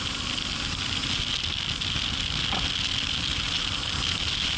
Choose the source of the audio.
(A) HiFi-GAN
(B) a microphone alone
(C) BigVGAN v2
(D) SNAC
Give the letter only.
B